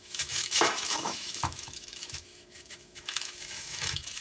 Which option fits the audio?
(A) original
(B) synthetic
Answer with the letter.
B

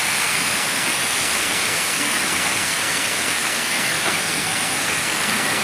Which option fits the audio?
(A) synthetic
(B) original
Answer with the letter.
A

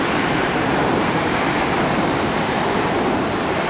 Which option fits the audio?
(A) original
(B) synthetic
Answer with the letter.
B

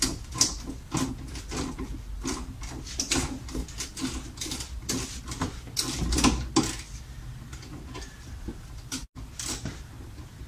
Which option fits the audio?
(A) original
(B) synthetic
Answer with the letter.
A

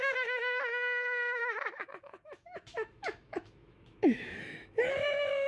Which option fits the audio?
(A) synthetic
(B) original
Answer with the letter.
A